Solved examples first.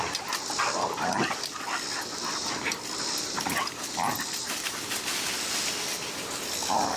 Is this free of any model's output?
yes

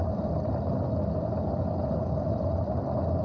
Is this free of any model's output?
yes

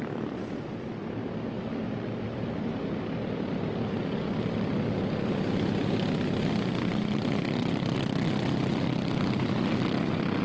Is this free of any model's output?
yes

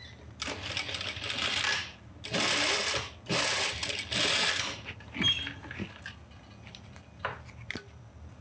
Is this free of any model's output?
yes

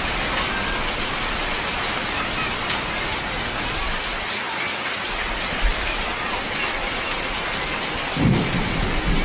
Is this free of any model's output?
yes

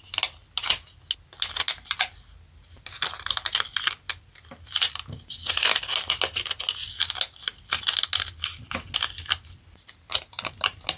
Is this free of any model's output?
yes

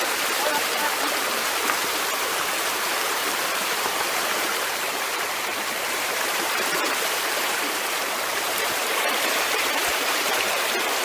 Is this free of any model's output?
no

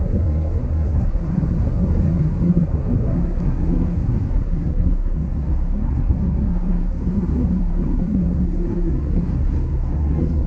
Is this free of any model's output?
no